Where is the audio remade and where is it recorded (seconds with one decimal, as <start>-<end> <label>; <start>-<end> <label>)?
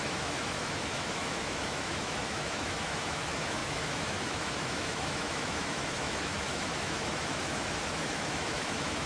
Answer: 0.0-9.1 remade